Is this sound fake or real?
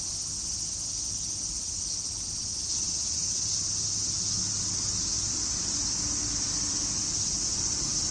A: real